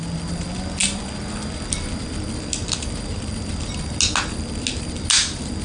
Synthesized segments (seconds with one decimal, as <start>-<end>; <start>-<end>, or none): none